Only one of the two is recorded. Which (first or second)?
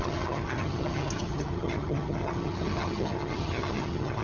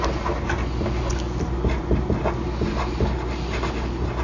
second